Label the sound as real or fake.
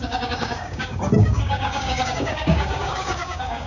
fake